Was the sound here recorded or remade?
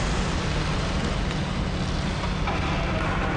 recorded